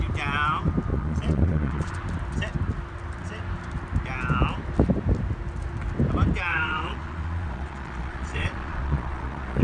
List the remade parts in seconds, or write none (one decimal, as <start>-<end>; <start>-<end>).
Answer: 0.9-1.9; 6.5-9.6